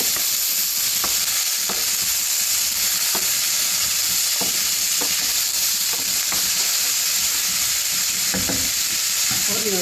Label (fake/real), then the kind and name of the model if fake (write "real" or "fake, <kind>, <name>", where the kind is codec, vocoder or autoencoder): real